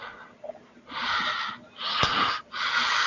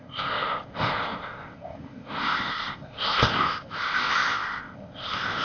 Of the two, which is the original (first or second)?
first